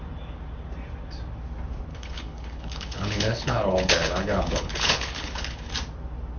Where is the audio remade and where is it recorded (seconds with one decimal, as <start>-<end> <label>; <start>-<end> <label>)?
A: 0.0-1.9 recorded; 1.9-5.7 remade; 5.7-6.4 recorded